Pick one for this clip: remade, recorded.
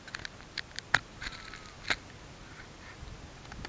recorded